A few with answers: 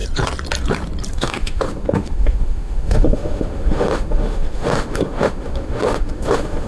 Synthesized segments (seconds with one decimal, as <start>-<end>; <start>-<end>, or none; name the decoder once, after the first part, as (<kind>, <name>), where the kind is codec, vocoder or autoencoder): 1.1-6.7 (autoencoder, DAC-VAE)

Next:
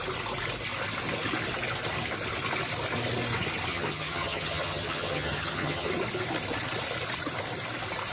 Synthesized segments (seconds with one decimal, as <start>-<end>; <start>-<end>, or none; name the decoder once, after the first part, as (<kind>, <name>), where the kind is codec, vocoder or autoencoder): 3.7-5.9 (vocoder, HiFi-GAN)

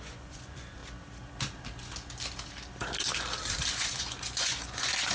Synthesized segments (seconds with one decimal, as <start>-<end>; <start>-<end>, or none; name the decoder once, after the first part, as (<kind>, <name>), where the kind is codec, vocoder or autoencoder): 0.0-0.8 (vocoder, Vocos); 3.7-5.1

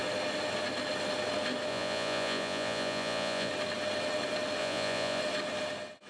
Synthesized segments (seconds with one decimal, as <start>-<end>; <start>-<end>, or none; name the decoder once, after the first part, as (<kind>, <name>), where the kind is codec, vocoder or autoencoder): 1.7-3.5 (vocoder, Vocos); 4.6-5.2